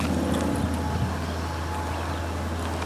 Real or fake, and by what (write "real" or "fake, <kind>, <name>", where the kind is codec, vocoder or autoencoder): real